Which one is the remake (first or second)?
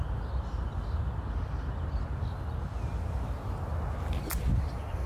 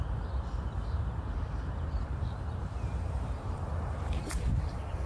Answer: second